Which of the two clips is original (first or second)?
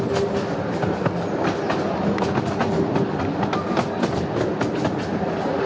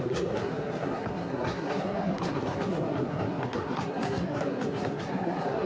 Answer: first